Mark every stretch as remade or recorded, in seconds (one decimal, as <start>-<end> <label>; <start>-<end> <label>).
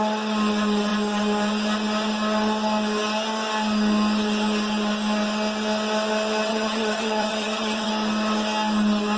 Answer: 0.0-6.5 recorded; 6.5-7.9 remade; 7.9-9.2 recorded